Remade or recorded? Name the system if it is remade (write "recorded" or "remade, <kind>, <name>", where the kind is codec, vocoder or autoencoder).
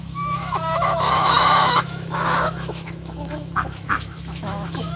remade, autoencoder, DAC-VAE